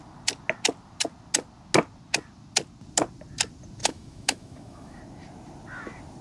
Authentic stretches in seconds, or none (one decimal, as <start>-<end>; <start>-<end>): 0.0-3.8; 5.0-6.2